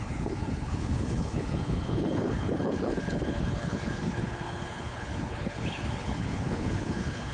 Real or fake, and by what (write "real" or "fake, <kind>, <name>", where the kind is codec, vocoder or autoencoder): fake, codec, HILCodec